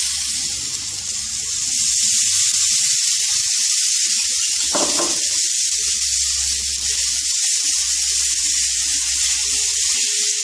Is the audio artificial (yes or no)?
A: no